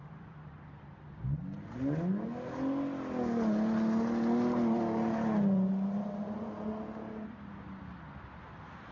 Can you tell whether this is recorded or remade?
recorded